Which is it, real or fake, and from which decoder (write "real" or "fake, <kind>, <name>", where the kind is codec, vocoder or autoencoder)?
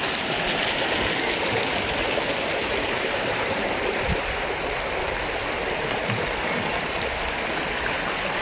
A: real